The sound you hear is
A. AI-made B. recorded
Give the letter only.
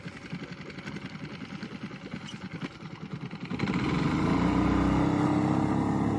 B